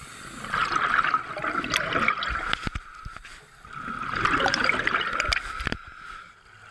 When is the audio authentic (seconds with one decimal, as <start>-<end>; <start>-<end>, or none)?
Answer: 0.0-6.7